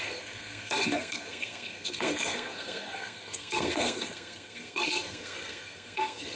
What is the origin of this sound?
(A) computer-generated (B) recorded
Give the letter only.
A